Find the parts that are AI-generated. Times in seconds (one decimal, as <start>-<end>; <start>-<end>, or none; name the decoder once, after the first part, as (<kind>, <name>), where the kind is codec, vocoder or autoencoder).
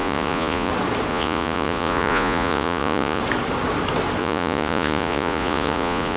0.0-0.7 (vocoder, Vocos); 1.1-3.2; 4.2-6.2